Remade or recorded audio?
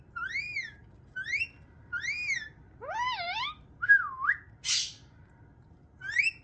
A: recorded